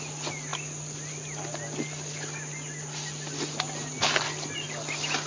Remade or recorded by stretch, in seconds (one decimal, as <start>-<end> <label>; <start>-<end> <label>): 0.0-5.3 recorded